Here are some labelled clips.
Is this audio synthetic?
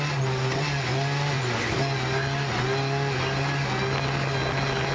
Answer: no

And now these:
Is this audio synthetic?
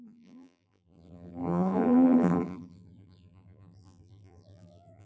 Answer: yes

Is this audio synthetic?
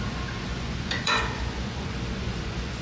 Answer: yes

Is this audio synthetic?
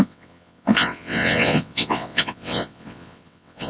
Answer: yes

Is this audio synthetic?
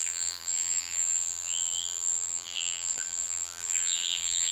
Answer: yes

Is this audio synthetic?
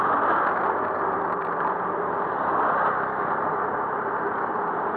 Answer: no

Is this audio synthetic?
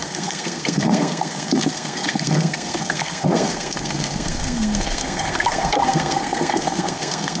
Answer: yes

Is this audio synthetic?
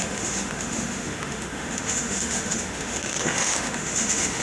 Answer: yes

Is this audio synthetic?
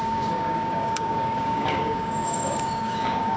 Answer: yes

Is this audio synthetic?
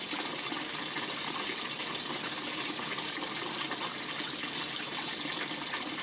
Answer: no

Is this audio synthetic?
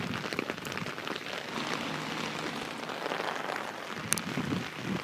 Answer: no